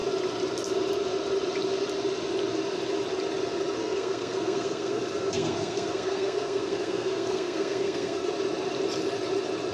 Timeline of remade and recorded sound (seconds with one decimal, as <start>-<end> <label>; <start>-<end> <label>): 0.0-3.8 recorded; 3.8-8.3 remade; 8.3-9.7 recorded